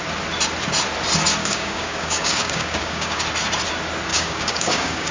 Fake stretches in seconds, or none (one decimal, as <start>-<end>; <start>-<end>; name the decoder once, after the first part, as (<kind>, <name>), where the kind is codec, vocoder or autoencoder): 1.4-3.2 (codec, DAC); 4.1-5.1